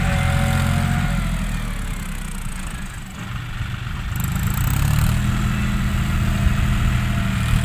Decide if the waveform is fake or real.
real